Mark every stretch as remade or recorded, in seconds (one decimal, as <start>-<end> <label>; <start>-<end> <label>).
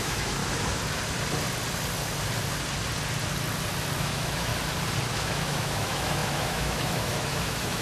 0.0-0.4 remade; 0.4-4.0 recorded; 4.0-4.5 remade; 4.5-5.1 recorded; 5.1-7.8 remade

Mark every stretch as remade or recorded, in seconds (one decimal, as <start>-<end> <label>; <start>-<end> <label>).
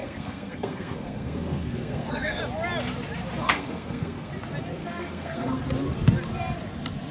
0.0-2.4 remade; 2.4-3.4 recorded; 3.4-4.3 remade; 4.3-4.8 recorded; 4.8-5.6 remade; 5.6-7.1 recorded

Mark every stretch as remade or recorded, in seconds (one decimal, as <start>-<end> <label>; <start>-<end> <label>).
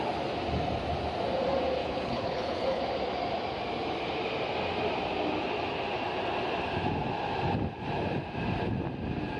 0.0-1.8 recorded; 1.8-2.8 remade; 2.8-9.4 recorded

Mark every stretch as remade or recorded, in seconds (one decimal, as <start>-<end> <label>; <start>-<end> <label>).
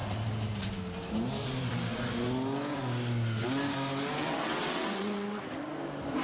0.0-4.2 recorded; 4.2-5.4 remade; 5.4-6.2 recorded